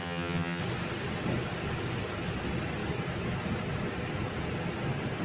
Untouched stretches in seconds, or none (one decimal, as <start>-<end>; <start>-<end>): 0.6-5.2